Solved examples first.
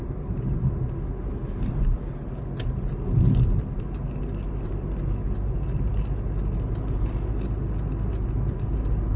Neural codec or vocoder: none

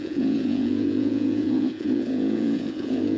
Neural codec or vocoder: vocoder, Vocos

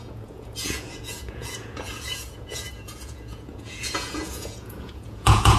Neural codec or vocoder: vocoder, Vocos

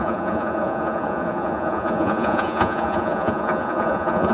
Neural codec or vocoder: vocoder, Vocos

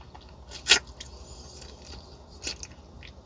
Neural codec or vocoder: none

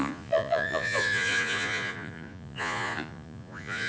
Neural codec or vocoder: vocoder, Vocos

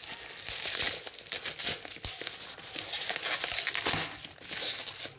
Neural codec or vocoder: none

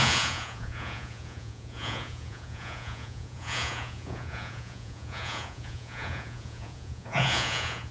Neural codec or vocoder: vocoder, Vocos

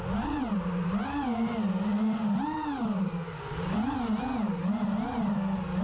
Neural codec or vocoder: none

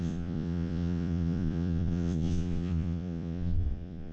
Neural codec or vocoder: vocoder, Vocos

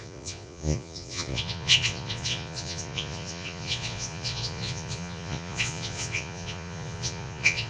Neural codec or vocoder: vocoder, Vocos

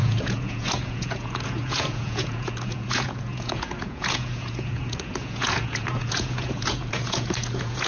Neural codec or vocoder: vocoder, Vocos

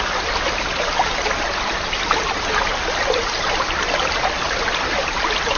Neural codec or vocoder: none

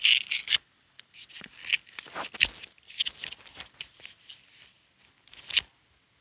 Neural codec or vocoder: none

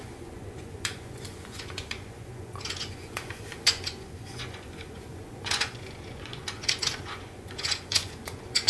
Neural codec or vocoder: vocoder, Vocos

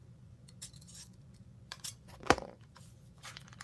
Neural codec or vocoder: vocoder, Vocos